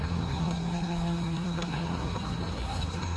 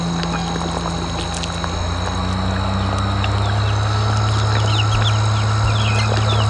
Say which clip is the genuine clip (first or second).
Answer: second